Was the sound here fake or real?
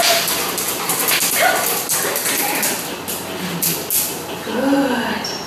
real